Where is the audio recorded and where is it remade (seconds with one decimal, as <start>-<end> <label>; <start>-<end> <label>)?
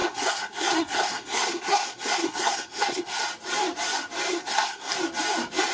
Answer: 0.0-3.2 remade; 3.2-4.3 recorded; 4.3-4.9 remade; 4.9-5.7 recorded